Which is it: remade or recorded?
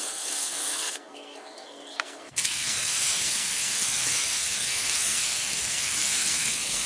remade